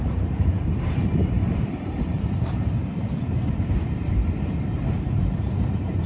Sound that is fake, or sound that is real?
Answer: fake